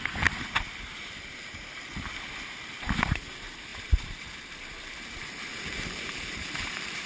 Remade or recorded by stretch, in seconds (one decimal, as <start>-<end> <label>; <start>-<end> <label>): 0.0-3.7 recorded; 3.7-4.5 remade; 4.5-5.5 recorded; 5.5-7.1 remade